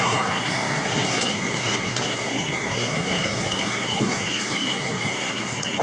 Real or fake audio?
fake